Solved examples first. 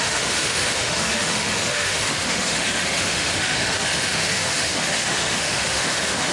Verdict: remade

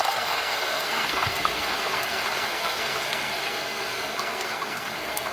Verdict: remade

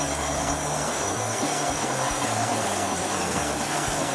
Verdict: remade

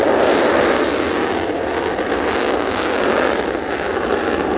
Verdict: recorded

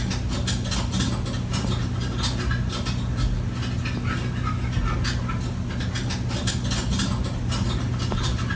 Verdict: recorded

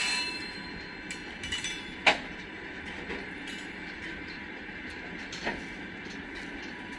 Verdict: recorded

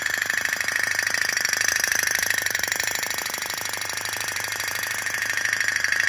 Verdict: remade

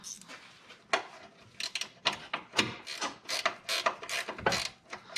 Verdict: recorded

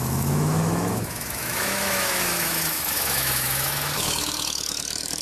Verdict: remade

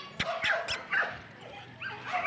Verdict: recorded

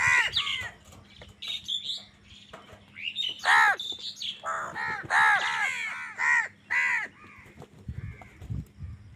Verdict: recorded